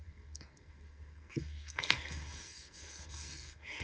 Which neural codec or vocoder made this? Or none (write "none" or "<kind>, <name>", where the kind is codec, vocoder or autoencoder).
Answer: codec, SNAC